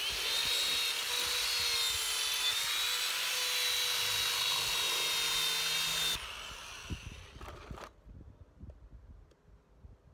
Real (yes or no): yes